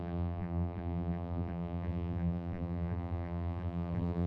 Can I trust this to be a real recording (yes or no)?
no